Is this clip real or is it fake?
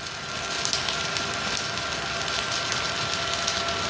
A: real